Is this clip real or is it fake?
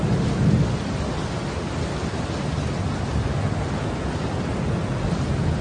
real